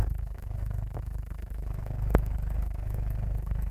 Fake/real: fake